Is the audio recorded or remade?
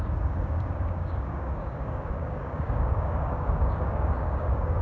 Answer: remade